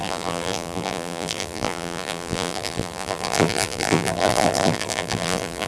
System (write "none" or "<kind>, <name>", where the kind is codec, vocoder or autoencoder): vocoder, BigVGAN v2